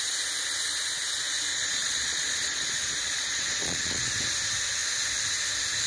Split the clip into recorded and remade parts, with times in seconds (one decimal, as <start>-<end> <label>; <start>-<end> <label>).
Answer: 0.0-1.5 recorded; 1.5-4.1 remade; 4.1-5.9 recorded